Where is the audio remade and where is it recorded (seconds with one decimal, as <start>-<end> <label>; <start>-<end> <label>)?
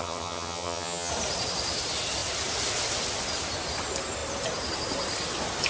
0.0-1.1 remade; 1.1-5.7 recorded